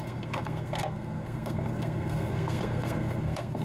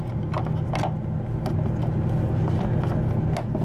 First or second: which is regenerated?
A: first